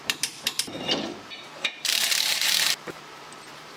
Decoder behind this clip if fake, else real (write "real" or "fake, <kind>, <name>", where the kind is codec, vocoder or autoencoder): fake, vocoder, BigVGAN v2